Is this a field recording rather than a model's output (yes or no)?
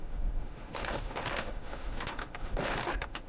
no